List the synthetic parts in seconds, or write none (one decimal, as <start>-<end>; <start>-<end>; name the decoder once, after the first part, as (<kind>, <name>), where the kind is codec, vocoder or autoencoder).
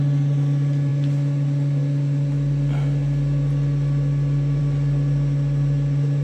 none